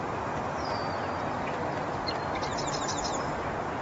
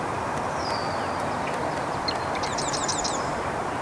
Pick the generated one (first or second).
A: second